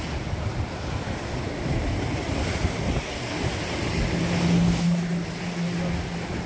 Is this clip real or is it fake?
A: real